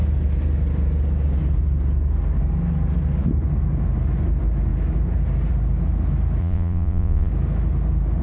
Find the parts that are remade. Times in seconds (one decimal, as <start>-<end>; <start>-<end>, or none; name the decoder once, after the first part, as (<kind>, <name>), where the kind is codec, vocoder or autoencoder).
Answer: 6.4-7.3 (vocoder, Vocos)